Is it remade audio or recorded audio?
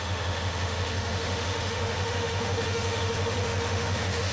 remade